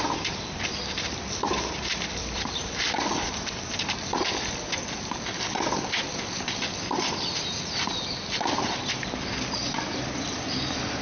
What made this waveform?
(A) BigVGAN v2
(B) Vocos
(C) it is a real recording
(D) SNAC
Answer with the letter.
A